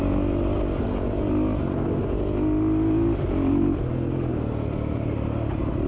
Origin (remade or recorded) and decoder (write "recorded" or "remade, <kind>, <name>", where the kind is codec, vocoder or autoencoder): recorded